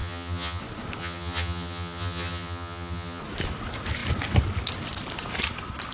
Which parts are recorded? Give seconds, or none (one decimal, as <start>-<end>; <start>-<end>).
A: 0.6-1.0; 3.2-5.9